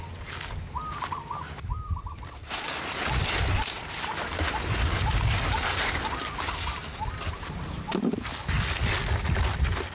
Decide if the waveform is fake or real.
real